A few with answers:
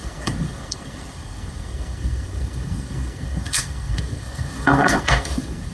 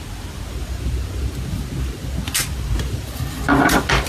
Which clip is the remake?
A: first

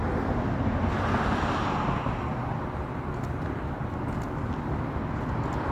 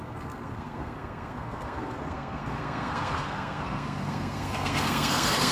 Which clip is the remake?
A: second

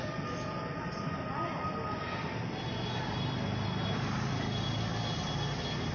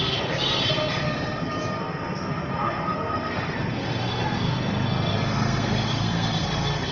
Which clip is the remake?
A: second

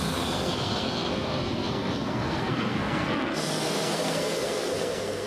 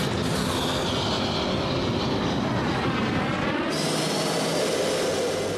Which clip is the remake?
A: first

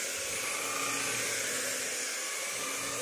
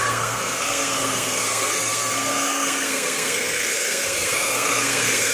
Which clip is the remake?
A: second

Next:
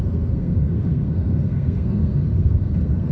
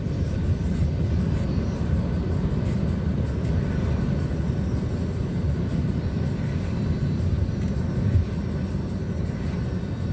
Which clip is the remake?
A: first